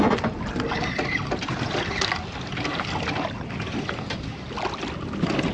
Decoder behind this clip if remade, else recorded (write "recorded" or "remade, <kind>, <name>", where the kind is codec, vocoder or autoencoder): recorded